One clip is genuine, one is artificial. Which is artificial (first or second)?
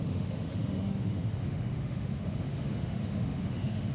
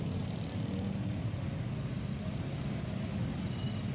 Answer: first